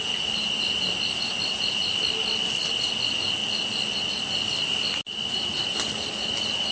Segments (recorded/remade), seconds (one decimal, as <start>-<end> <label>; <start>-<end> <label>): 0.0-6.7 recorded